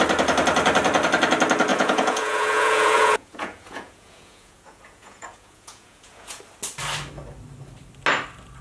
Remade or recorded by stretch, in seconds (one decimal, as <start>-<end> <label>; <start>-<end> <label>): 0.0-1.7 recorded; 1.7-6.4 remade; 6.4-8.6 recorded